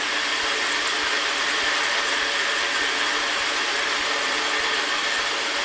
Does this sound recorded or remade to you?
recorded